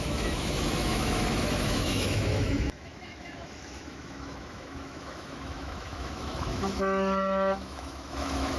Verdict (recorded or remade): remade